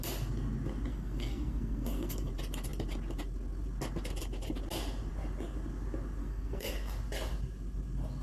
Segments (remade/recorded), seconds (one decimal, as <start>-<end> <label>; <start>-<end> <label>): 0.0-0.9 recorded; 0.9-2.3 remade; 2.3-6.2 recorded; 6.2-6.7 remade; 6.7-8.2 recorded